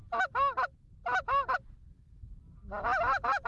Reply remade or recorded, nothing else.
recorded